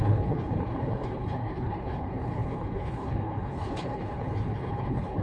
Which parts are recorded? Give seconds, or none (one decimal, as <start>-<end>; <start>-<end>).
none

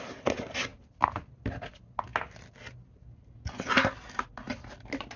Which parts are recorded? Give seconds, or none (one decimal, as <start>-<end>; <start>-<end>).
0.0-0.7; 1.7-5.2

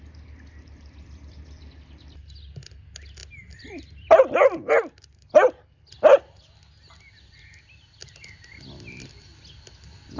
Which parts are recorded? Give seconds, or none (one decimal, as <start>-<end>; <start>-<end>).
0.0-10.2

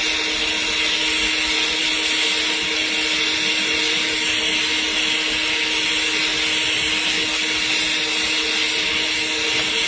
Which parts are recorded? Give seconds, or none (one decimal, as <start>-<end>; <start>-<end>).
0.0-9.9